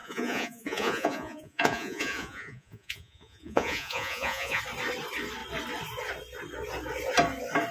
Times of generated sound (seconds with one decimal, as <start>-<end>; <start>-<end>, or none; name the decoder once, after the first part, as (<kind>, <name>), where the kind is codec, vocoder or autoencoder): 0.0-4.6 (vocoder, Vocos)